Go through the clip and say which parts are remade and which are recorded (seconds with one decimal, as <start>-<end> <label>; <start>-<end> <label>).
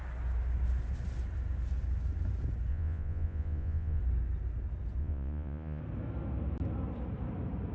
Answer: 0.0-2.7 recorded; 2.7-4.0 remade; 4.0-5.0 recorded; 5.0-5.8 remade; 5.8-7.7 recorded